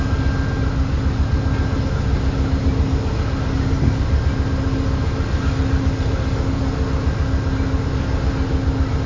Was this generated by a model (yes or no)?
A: no